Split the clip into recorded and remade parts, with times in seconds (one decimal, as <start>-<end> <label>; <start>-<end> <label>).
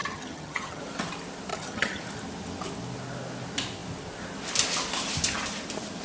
0.0-0.8 remade; 0.8-1.5 recorded; 1.5-2.0 remade; 2.0-6.0 recorded